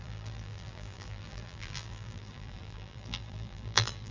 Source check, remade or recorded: remade